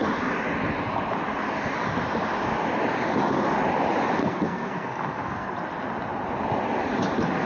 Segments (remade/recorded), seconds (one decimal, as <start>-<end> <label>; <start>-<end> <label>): 0.0-4.2 recorded; 4.2-5.5 remade; 5.5-7.5 recorded